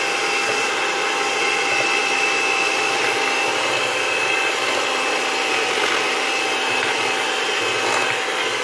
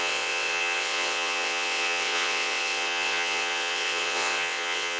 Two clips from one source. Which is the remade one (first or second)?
second